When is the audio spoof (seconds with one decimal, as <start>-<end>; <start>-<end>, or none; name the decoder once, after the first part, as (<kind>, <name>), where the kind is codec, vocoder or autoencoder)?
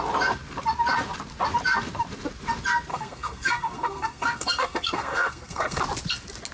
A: 2.9-5.8 (codec, SNAC)